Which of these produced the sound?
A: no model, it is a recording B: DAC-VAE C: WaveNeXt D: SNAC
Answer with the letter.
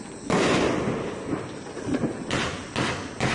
A